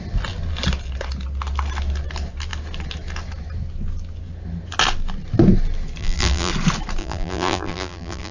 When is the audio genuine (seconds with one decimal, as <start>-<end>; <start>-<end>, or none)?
0.0-6.0; 6.5-7.0